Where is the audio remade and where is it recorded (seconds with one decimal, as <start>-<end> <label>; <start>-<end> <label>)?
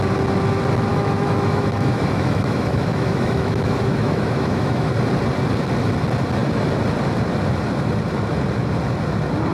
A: 0.0-0.9 recorded; 0.9-4.9 remade; 4.9-9.5 recorded